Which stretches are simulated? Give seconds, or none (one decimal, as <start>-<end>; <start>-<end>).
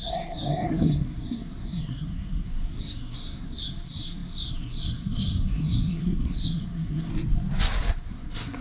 0.0-7.1; 7.8-8.6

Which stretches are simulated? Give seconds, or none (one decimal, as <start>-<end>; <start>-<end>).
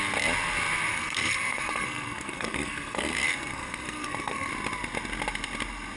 0.9-4.5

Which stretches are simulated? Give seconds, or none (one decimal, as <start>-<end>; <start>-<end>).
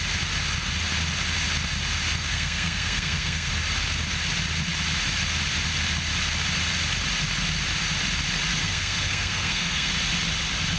2.3-3.5; 8.5-9.9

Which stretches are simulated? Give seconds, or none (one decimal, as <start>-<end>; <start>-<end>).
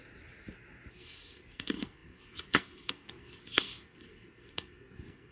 0.9-5.3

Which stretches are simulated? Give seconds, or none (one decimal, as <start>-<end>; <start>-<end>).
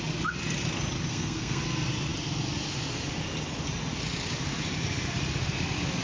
1.1-1.6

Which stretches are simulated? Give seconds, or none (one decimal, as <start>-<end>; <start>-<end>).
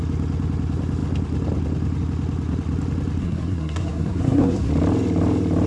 3.2-4.7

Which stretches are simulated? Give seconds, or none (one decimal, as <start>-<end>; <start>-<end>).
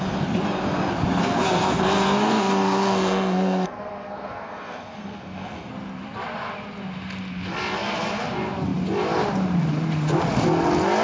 1.2-5.7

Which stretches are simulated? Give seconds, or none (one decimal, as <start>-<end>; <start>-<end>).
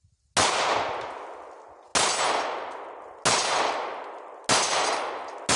none